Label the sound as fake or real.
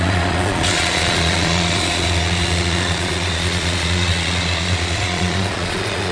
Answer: fake